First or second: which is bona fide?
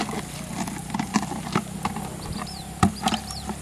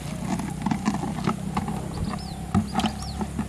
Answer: second